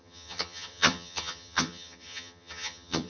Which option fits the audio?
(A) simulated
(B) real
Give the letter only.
A